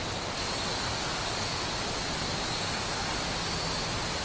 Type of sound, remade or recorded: recorded